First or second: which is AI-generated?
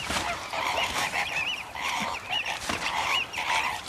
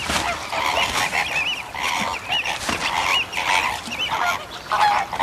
first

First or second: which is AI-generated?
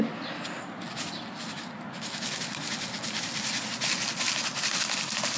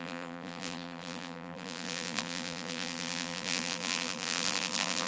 second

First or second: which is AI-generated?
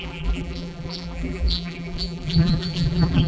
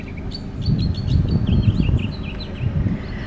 first